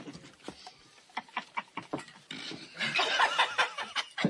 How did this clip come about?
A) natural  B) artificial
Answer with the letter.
A